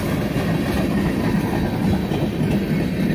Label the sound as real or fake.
real